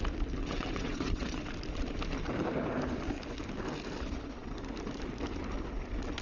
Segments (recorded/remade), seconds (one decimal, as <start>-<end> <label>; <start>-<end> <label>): 0.0-0.4 recorded; 0.4-1.4 remade; 1.4-6.2 recorded